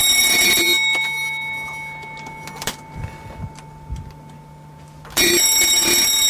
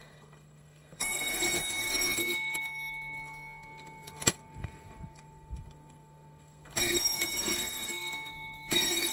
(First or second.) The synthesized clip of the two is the second